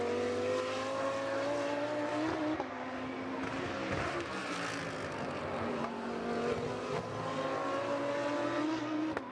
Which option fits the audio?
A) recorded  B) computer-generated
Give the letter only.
A